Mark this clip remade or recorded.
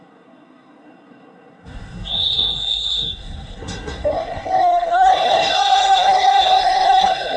remade